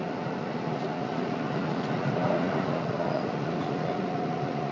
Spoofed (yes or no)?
yes